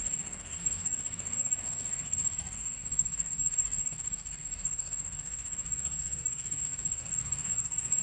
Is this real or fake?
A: fake